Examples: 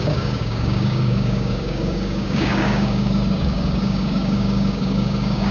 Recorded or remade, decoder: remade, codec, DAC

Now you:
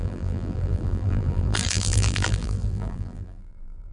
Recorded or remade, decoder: remade, vocoder, BigVGAN v2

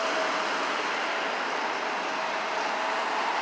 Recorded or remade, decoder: recorded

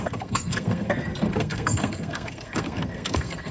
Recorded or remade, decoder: remade, codec, SNAC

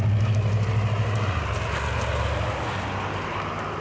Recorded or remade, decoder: recorded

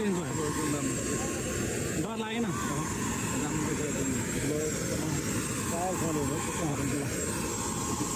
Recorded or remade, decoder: recorded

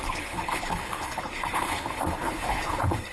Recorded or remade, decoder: remade, codec, HILCodec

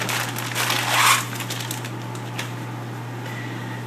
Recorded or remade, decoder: recorded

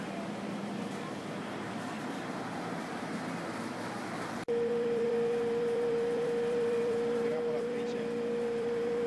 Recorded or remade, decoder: remade, vocoder, BigVGAN v2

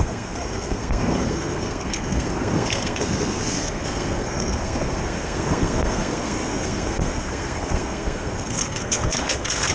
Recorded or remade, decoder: remade, codec, SNAC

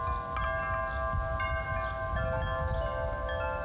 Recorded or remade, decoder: recorded